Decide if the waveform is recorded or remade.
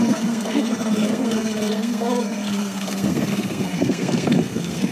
remade